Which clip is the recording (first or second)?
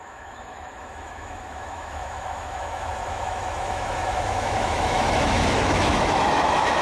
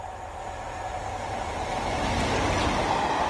second